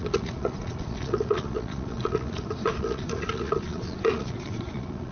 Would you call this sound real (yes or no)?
no